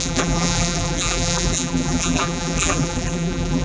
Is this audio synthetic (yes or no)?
yes